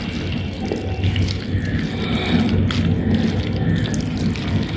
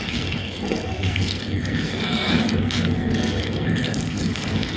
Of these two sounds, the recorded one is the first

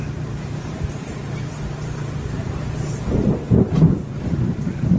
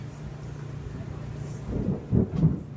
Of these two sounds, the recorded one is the second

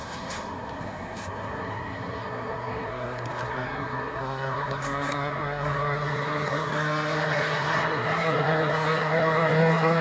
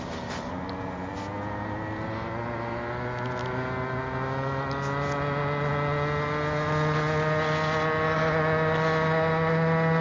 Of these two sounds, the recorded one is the second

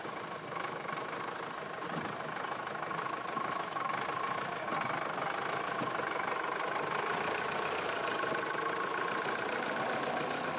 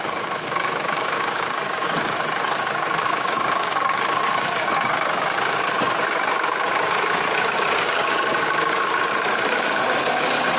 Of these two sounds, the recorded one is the first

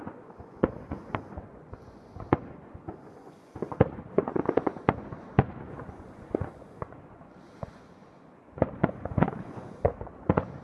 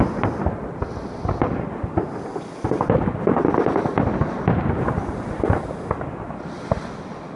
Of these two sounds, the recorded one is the second